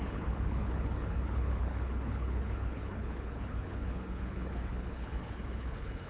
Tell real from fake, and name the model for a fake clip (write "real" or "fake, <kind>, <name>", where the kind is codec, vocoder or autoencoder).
fake, codec, HILCodec